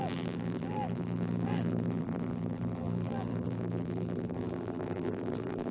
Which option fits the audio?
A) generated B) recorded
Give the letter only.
A